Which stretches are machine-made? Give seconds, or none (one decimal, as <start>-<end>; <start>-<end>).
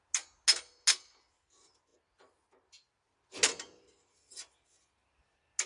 none